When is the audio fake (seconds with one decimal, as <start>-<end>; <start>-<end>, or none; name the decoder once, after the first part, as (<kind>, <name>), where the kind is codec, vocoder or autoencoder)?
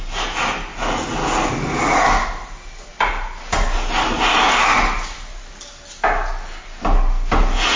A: none